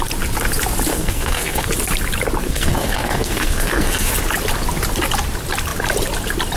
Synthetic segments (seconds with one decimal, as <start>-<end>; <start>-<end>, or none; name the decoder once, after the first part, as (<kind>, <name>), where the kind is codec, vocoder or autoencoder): 0.9-1.7 (codec, SNAC); 2.4-4.1